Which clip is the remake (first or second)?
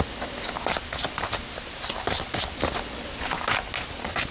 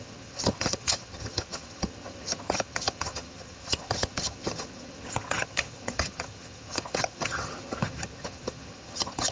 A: second